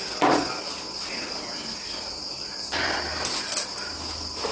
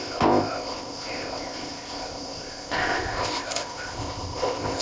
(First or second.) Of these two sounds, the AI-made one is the second